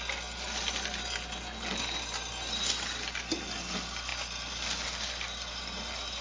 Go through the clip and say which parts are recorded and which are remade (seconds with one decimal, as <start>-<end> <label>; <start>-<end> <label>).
0.0-6.2 recorded